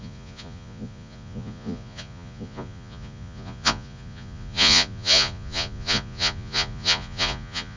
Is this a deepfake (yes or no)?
yes